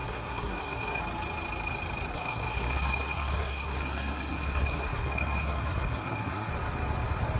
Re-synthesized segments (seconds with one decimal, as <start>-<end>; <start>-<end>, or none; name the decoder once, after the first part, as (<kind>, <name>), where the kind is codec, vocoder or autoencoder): 0.0-1.0 (codec, SNAC); 2.1-6.5